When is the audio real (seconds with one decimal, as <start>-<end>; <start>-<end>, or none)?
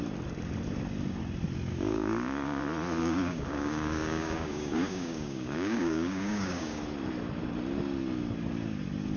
0.0-1.7; 2.6-3.0; 6.8-9.2